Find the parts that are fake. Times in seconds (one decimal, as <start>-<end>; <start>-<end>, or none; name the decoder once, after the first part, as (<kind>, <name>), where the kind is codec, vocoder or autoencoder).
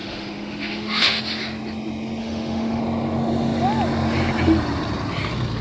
0.0-1.2 (autoencoder, DAC-VAE); 2.2-2.8